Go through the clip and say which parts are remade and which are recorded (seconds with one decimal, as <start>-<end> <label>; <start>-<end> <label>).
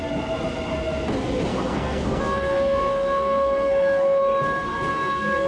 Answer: 0.0-1.5 recorded; 1.5-4.2 remade; 4.2-4.9 recorded; 4.9-5.5 remade